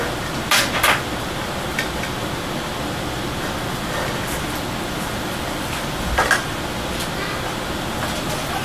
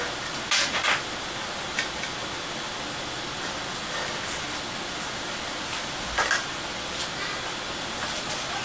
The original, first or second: second